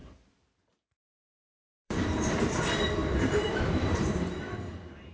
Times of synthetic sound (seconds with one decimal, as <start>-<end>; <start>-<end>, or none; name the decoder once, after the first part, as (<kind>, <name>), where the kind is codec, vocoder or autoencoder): 0.0-2.6 (vocoder, BigVGAN v2); 3.0-4.0